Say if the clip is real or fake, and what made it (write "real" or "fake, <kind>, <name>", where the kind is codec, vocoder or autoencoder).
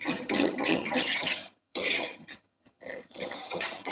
fake, vocoder, HiFi-GAN